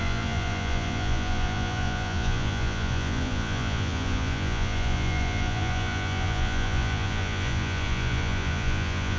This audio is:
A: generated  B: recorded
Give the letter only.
A